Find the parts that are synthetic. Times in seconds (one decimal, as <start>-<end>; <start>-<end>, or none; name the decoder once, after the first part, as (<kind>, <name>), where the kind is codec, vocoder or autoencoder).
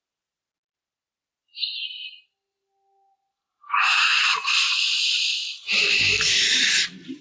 none